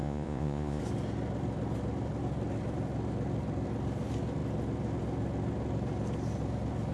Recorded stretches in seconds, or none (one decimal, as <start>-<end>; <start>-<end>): 0.8-6.9